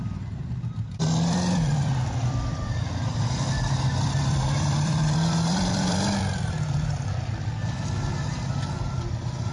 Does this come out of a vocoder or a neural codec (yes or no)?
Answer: yes